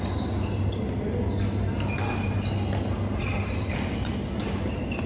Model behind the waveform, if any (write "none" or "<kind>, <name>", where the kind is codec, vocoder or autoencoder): none